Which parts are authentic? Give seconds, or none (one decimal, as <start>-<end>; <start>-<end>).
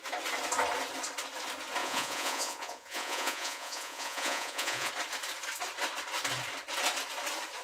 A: 0.0-1.8; 4.9-7.6